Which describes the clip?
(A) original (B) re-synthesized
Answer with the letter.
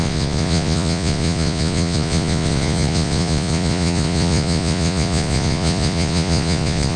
B